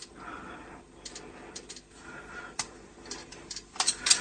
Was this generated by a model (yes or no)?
no